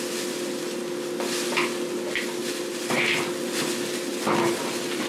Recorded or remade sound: recorded